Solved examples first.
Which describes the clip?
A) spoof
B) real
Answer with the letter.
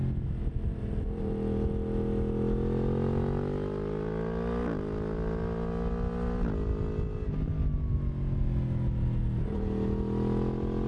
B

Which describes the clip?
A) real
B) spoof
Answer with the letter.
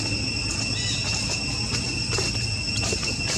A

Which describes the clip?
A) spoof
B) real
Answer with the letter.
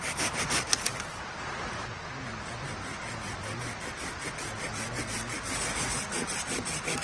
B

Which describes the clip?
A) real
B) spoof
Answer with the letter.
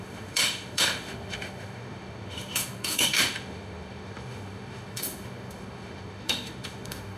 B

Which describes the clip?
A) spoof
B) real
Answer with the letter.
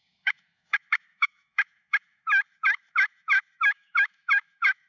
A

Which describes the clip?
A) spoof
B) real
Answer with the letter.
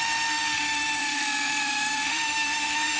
A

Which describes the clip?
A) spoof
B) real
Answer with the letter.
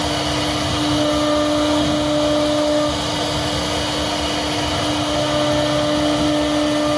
B